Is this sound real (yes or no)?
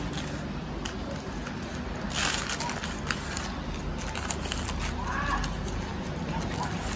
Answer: yes